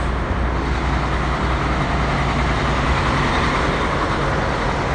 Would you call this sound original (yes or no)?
yes